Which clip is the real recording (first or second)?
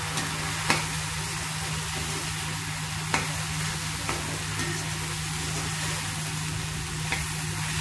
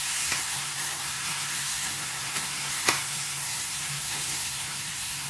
first